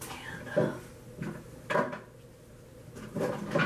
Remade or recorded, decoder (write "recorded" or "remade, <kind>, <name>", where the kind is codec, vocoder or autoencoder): recorded